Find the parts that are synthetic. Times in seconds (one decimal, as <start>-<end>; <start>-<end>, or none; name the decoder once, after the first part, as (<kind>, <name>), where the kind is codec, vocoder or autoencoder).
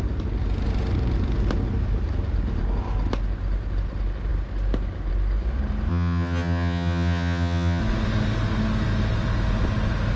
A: 5.9-7.8 (vocoder, HiFi-GAN)